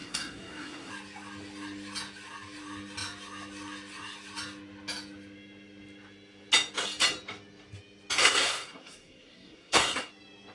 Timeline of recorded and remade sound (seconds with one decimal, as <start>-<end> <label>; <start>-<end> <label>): 0.0-0.9 remade; 0.9-8.2 recorded; 8.2-10.1 remade; 10.1-10.5 recorded